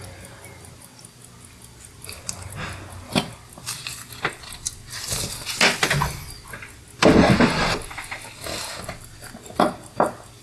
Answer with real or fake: real